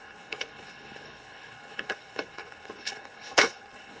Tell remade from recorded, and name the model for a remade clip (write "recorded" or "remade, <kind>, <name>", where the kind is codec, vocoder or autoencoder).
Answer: remade, codec, HILCodec